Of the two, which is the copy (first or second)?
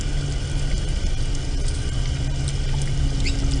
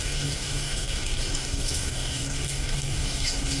second